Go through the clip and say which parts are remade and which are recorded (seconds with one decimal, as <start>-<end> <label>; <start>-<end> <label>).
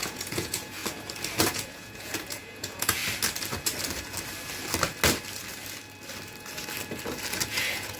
0.0-0.8 remade; 0.8-1.5 recorded; 1.5-3.0 remade; 3.0-7.5 recorded; 7.5-8.0 remade